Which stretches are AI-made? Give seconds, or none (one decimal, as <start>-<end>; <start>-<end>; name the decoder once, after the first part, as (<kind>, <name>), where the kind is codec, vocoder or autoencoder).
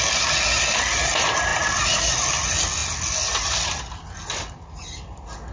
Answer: none